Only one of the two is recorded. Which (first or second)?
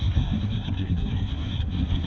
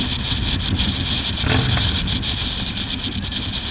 second